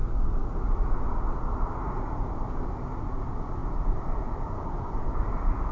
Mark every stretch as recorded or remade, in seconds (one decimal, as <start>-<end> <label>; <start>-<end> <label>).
0.0-5.7 recorded